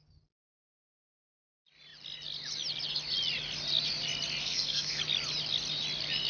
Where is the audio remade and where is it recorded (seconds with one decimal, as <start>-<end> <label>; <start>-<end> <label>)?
0.0-4.4 recorded; 4.4-5.0 remade; 5.0-6.3 recorded